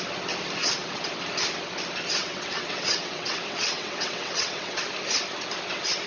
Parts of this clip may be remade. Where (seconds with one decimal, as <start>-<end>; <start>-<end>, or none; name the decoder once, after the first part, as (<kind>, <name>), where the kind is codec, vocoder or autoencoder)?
0.6-1.1 (vocoder, WaveNeXt); 2.2-4.8